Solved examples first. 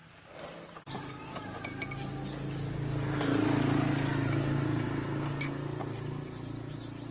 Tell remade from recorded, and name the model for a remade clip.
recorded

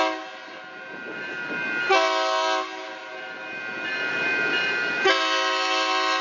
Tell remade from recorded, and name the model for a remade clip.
recorded